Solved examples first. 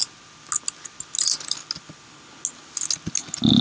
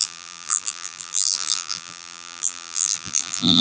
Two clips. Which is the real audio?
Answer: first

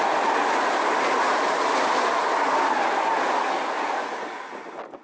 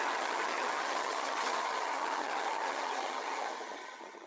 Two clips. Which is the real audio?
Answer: first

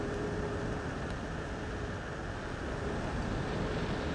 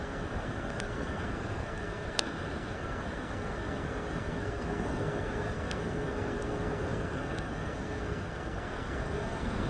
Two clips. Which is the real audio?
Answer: first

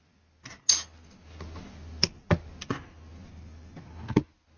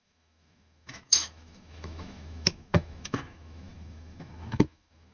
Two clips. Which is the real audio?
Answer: first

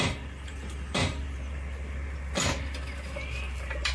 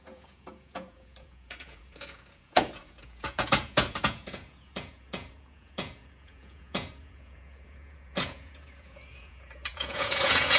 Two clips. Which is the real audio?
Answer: first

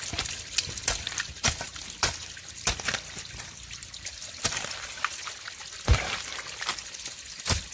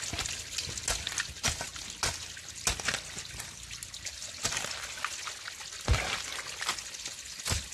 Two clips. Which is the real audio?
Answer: second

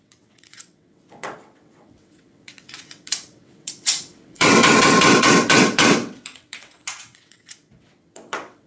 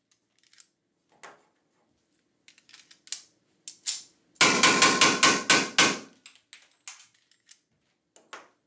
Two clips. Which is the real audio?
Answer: second